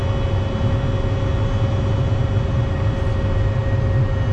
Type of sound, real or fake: real